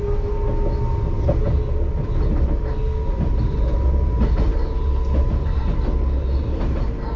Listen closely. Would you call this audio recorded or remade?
recorded